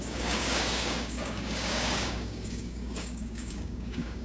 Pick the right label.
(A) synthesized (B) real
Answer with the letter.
A